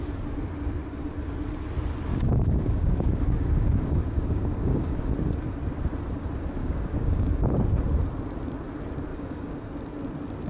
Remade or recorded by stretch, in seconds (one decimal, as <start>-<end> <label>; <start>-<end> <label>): 0.0-2.1 recorded; 2.1-5.1 remade; 5.1-6.6 recorded; 6.6-7.4 remade; 7.4-9.1 recorded; 9.1-9.6 remade; 9.6-10.5 recorded